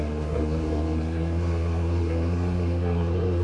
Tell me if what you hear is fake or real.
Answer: fake